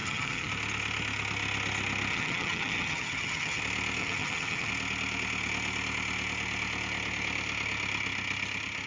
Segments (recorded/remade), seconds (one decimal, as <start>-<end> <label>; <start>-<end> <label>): 0.0-0.5 remade; 0.5-2.1 recorded; 2.1-3.6 remade; 3.6-4.0 recorded; 4.0-4.7 remade; 4.7-8.9 recorded